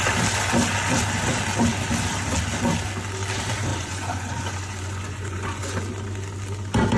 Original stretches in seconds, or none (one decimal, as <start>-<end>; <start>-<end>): 0.0-3.7; 5.8-7.0